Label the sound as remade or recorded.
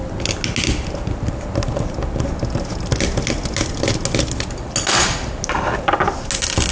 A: recorded